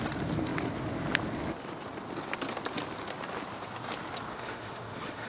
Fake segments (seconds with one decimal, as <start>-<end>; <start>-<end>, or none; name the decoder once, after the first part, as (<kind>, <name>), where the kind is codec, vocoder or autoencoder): 4.3-5.3 (autoencoder, DAC-VAE)

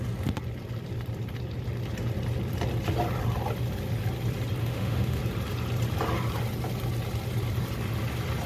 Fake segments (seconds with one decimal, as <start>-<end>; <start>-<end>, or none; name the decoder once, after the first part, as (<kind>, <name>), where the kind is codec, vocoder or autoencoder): 4.6-5.2 (autoencoder, DAC-VAE)